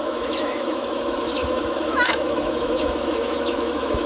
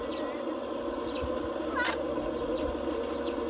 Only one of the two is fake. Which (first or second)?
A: first